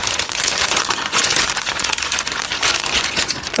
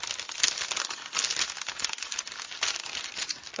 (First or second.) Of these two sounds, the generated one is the first